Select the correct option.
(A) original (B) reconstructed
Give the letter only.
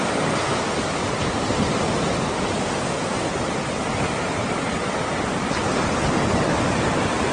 A